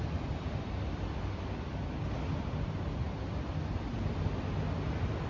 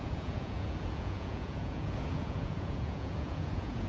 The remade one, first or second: second